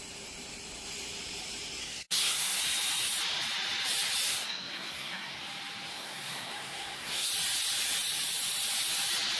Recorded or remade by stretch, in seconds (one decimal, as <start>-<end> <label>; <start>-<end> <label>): 0.0-1.8 recorded; 1.8-2.6 remade; 2.6-4.3 recorded; 4.3-5.4 remade; 5.4-5.9 recorded; 5.9-7.3 remade; 7.3-9.4 recorded